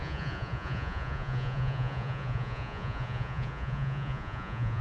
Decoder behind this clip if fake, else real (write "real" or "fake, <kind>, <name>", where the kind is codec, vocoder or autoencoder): fake, vocoder, Vocos